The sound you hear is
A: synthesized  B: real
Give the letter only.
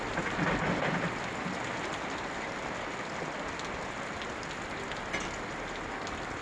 B